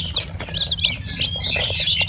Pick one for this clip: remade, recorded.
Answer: recorded